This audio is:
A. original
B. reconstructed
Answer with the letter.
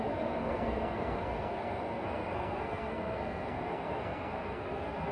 B